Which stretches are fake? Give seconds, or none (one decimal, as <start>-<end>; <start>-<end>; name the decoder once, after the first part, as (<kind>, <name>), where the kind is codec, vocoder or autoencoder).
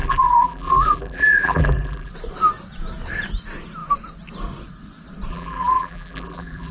0.0-2.1 (vocoder, BigVGAN v2); 5.3-6.7